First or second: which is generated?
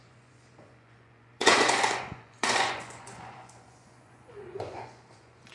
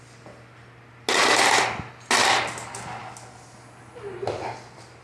first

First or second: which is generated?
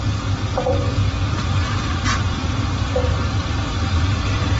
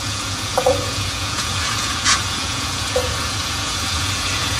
second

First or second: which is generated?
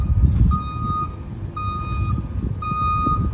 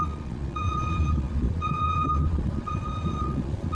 second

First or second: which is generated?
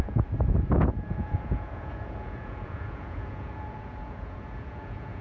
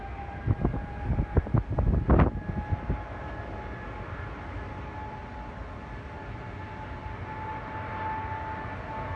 first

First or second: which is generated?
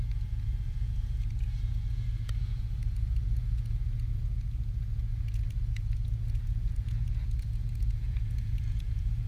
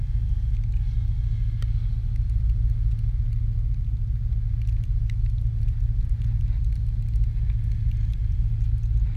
first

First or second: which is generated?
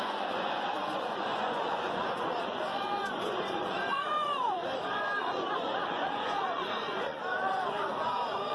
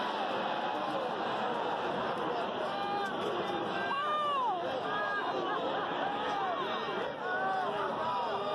first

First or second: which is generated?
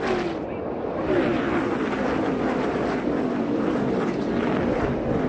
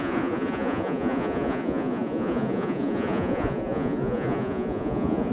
second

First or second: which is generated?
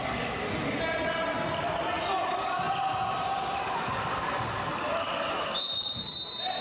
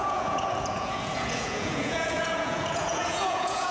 second